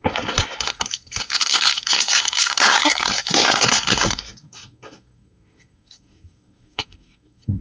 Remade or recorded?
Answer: remade